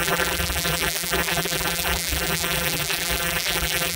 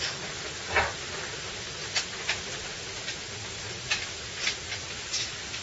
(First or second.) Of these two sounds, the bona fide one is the second